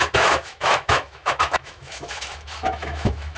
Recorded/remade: remade